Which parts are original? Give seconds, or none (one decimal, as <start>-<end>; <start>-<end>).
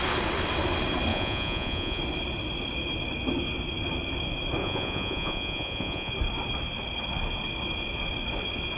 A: 0.0-1.1; 2.0-4.6; 6.1-8.8